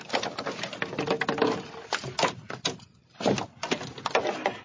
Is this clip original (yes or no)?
yes